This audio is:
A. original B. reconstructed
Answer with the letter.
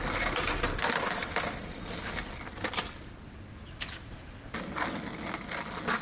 A